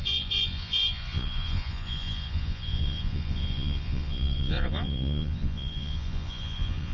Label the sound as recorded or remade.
remade